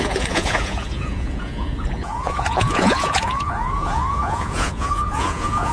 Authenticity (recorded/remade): remade